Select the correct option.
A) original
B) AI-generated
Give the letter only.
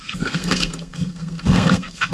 B